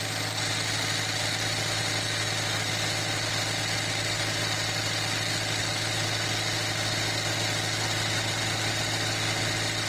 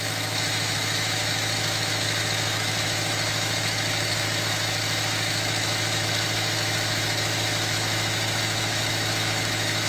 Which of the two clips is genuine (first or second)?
first